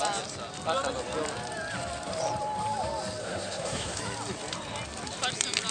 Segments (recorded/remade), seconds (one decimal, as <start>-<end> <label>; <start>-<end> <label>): 0.0-3.2 recorded; 3.2-4.0 remade; 4.0-5.7 recorded